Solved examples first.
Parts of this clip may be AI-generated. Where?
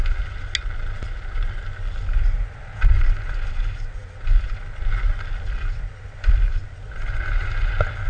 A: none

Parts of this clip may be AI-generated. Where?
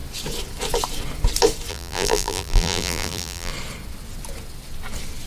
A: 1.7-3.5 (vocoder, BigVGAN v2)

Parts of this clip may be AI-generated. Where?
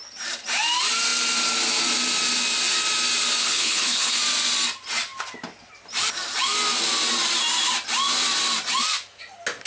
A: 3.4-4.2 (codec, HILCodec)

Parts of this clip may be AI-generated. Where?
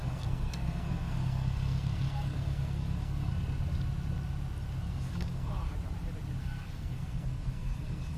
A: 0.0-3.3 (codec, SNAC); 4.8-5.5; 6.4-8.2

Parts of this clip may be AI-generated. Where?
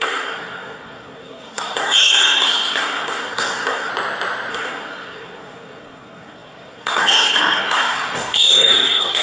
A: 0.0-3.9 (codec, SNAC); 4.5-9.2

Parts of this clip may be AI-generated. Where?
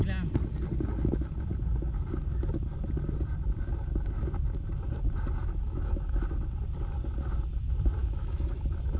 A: 5.4-6.2 (autoencoder, DAC-VAE); 8.0-8.6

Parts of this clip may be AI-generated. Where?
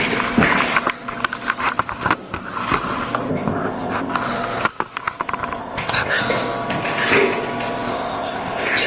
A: 3.3-4.1 (codec, ZipCodec); 5.6-6.2; 7.9-8.9